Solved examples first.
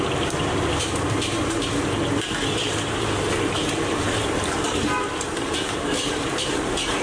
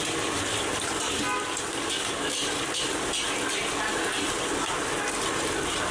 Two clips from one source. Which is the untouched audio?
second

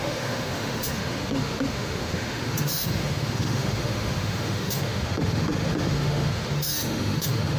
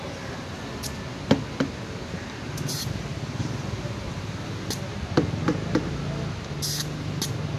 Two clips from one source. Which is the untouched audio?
second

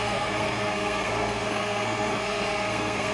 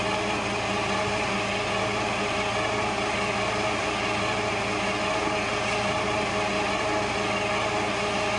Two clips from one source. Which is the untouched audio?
second